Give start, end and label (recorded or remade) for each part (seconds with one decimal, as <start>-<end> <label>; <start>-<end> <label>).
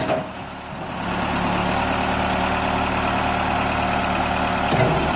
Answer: 0.0-0.7 remade; 0.7-5.2 recorded